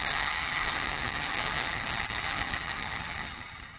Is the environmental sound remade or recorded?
remade